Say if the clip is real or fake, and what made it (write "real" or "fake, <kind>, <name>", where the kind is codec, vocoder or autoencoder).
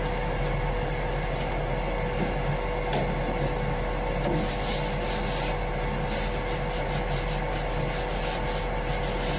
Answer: real